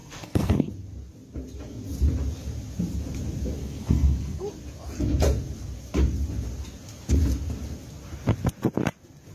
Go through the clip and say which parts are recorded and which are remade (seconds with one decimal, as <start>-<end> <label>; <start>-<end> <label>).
0.0-0.7 remade; 0.7-3.6 recorded; 3.6-4.5 remade; 4.5-9.3 recorded